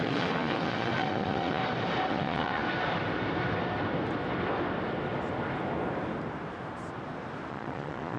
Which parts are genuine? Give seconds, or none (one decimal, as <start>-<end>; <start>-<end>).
1.6-2.1; 2.6-7.5